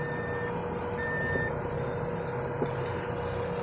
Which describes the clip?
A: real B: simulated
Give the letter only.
A